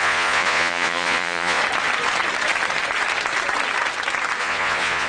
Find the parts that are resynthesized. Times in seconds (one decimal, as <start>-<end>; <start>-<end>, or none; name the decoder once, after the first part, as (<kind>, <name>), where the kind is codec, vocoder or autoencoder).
0.0-1.6 (vocoder, Vocos); 4.4-5.1